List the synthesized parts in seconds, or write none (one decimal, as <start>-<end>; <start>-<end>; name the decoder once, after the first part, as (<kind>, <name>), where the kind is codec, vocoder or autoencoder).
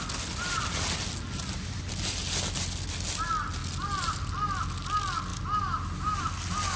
none